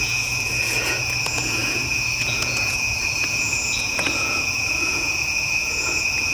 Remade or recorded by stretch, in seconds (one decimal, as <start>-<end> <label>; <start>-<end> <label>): 0.0-6.3 remade